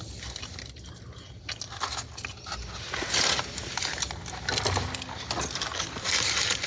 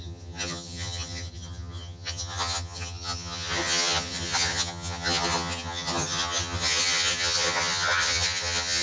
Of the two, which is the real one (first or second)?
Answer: first